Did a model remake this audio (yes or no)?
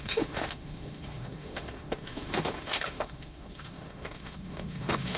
yes